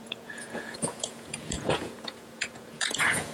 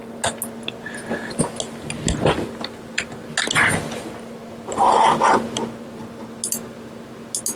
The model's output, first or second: first